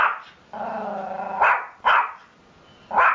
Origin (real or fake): real